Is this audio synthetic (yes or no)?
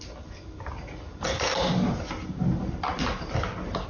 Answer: no